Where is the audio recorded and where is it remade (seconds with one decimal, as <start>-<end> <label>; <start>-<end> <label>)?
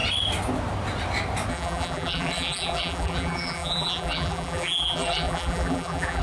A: 0.0-1.5 recorded; 1.5-6.2 remade